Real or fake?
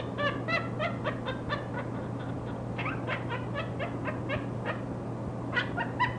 real